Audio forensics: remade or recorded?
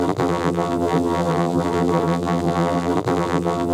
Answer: remade